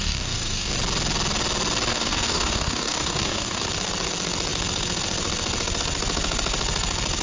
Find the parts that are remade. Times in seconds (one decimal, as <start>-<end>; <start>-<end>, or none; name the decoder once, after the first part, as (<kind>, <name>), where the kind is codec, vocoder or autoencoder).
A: 0.0-0.7 (codec, DAC); 1.9-3.6